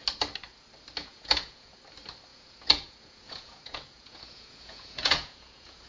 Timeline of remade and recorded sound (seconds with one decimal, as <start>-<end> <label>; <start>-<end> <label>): 0.0-1.0 recorded; 1.0-1.8 remade; 1.8-2.3 recorded; 2.3-5.9 remade